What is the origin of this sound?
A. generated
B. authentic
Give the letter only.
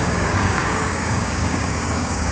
A